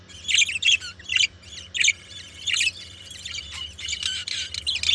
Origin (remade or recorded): recorded